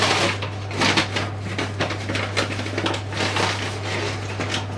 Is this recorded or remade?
recorded